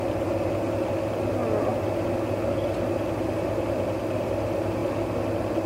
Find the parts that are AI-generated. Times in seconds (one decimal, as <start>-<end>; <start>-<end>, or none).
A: none